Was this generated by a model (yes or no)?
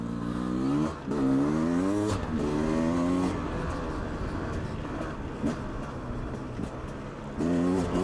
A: no